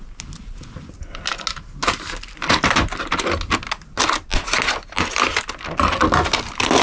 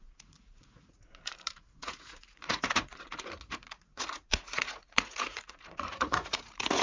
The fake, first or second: second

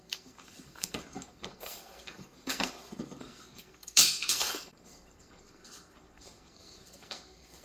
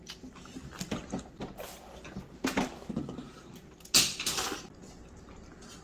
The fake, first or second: first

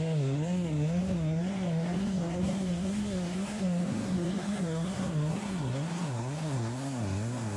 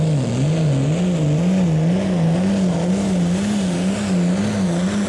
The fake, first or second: first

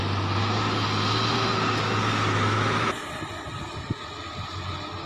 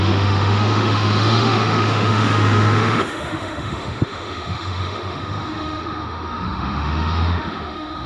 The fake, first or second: second